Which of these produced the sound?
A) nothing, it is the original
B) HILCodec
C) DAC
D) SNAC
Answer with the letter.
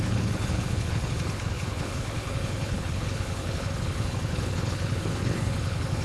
B